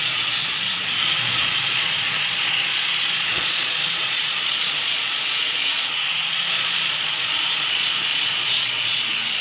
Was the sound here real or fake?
fake